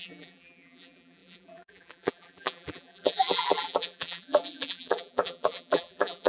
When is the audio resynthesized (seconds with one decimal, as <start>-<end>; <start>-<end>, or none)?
0.0-6.3